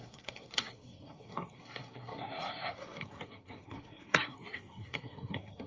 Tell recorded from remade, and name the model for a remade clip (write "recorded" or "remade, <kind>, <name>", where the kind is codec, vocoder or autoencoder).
remade, codec, SNAC